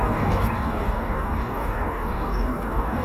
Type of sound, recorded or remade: remade